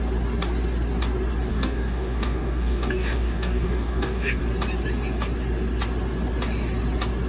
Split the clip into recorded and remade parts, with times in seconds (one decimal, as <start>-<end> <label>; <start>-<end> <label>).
0.0-1.5 recorded; 1.5-4.4 remade; 4.4-7.3 recorded